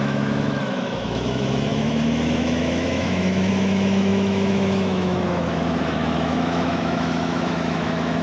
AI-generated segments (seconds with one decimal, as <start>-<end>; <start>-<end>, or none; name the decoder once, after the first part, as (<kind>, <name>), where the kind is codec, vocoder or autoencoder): 0.0-8.2 (autoencoder, DAC-VAE)